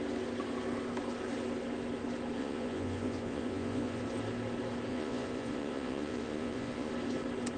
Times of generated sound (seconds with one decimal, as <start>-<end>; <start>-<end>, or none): 2.4-4.0; 4.9-6.9